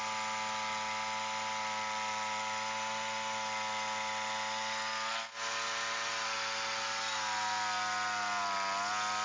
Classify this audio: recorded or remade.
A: recorded